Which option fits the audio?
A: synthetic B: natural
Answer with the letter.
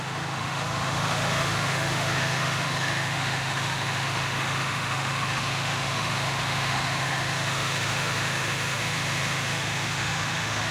A